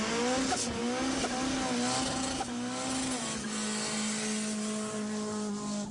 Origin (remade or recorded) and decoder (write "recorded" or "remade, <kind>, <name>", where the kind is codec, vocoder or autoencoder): recorded